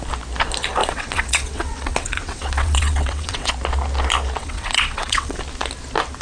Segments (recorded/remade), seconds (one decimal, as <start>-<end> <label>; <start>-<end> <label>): 0.0-0.8 recorded; 0.8-3.5 remade; 3.5-4.4 recorded; 4.4-5.4 remade; 5.4-6.2 recorded